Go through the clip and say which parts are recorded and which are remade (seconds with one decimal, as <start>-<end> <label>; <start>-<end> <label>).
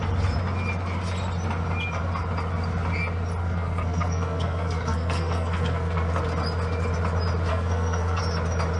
0.0-3.4 recorded; 3.4-6.1 remade; 6.1-7.5 recorded; 7.5-8.2 remade; 8.2-8.8 recorded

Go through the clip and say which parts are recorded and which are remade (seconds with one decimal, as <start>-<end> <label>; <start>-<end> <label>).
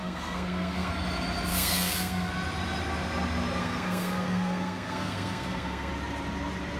0.0-0.9 remade; 0.9-1.5 recorded; 1.5-2.3 remade; 2.3-3.6 recorded; 3.6-5.9 remade; 5.9-6.8 recorded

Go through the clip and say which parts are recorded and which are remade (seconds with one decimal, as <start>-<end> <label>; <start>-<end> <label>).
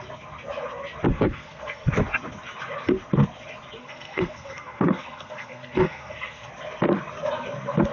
0.0-1.1 recorded; 1.1-1.9 remade; 1.9-3.8 recorded; 3.8-6.5 remade; 6.5-7.9 recorded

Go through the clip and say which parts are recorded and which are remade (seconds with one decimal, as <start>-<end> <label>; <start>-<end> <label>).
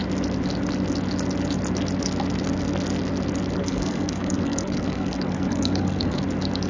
0.0-3.6 recorded; 3.6-6.2 remade; 6.2-6.7 recorded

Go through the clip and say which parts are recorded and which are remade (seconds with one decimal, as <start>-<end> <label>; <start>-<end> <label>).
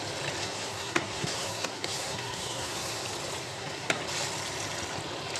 0.0-0.4 recorded; 0.4-3.0 remade; 3.0-3.4 recorded; 3.4-4.0 remade; 4.0-5.4 recorded